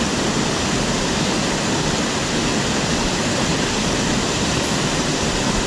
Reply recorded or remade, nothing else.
recorded